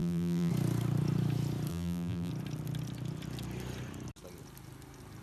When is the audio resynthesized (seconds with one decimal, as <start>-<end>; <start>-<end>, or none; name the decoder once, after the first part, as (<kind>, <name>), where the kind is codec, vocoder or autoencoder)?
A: 0.0-0.5 (vocoder, BigVGAN v2); 1.7-2.3